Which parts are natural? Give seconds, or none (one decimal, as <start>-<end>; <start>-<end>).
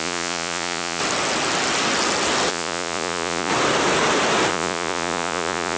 1.0-2.5; 3.5-4.5